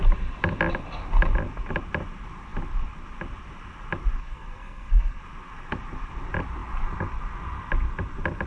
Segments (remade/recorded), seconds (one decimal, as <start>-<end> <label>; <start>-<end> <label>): 0.0-4.2 recorded; 4.2-5.2 remade; 5.2-8.5 recorded